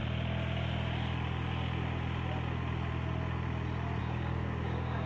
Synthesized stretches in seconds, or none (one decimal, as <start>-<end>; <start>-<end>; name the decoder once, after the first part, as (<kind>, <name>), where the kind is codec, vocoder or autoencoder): 4.0-5.1 (codec, DAC)